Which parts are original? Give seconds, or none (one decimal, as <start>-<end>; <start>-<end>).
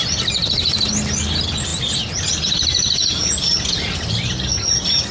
0.0-5.1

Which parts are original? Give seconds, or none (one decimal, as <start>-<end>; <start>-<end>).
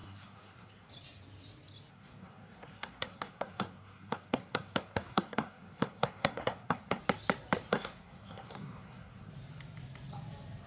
0.9-1.9; 7.0-7.7; 9.3-10.7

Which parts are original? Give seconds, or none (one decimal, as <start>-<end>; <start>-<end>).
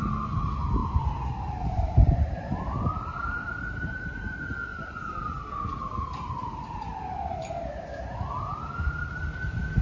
0.0-0.8; 3.9-4.7; 5.4-9.8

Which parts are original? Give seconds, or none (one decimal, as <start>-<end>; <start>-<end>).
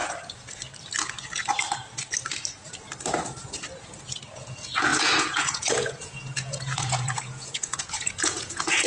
0.0-4.3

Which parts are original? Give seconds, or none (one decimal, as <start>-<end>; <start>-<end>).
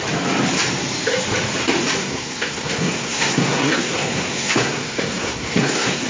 0.0-2.0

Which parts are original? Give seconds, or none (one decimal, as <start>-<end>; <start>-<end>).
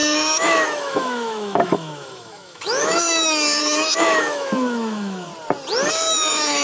5.3-5.9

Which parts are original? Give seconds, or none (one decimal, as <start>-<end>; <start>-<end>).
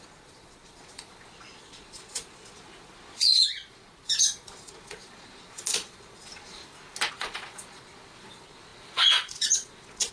6.6-7.1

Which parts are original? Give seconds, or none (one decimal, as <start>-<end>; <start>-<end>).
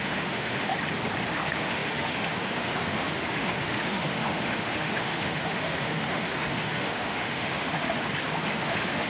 0.7-1.3; 8.0-8.5